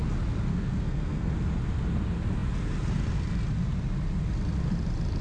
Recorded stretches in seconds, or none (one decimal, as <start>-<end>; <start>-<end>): 0.0-0.5; 1.3-5.2